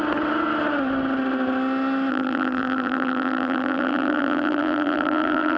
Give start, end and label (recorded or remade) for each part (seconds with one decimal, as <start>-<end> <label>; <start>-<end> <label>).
0.0-2.1 recorded; 2.1-5.6 remade